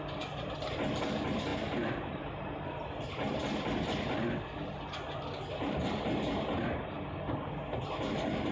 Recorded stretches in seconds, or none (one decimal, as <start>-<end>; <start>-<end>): 0.0-1.5; 2.3-8.5